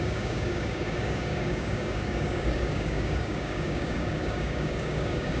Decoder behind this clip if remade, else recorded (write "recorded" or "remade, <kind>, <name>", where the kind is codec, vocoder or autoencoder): remade, codec, DAC